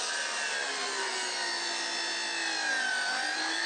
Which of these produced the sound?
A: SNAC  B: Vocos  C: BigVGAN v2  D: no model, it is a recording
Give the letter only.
D